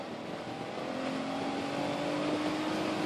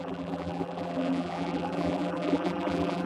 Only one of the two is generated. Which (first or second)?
second